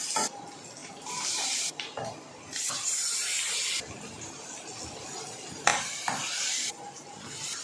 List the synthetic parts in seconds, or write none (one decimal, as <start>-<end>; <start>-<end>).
0.8-4.5; 5.7-7.6